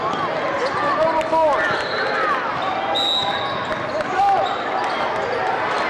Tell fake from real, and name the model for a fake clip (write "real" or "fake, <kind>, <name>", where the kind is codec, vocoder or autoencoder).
real